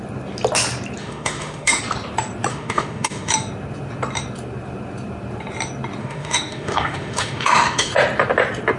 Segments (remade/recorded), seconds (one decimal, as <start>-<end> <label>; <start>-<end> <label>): 0.0-1.0 recorded; 1.0-1.8 remade; 1.8-2.5 recorded; 2.5-3.3 remade; 3.3-6.0 recorded; 6.0-7.9 remade; 7.9-8.8 recorded